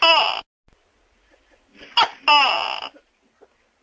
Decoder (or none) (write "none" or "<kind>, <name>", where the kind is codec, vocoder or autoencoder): none